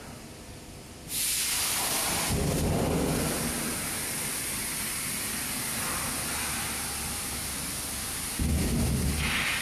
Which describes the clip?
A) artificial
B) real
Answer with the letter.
B